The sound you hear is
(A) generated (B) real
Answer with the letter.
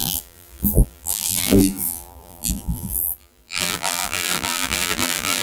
A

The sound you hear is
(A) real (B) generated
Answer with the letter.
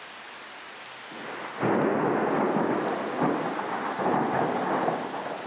A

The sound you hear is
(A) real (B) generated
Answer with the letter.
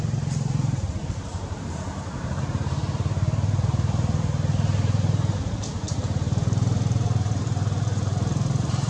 B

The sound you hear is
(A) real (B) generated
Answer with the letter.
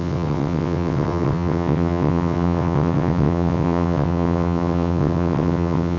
B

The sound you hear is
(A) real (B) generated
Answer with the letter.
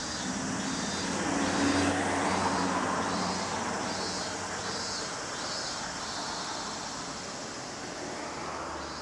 A